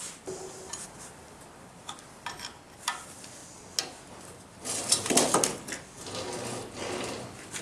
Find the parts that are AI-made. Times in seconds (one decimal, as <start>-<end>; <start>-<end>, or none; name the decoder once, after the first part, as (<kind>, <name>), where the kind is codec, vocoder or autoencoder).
none